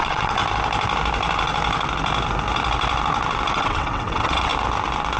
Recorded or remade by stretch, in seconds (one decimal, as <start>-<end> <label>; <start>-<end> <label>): 0.0-0.4 remade; 0.4-3.5 recorded; 3.5-4.5 remade; 4.5-5.2 recorded